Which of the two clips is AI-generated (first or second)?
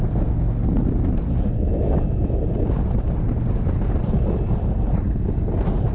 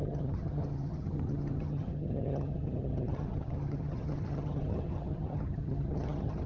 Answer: second